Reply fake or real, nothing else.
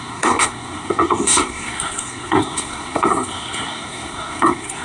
fake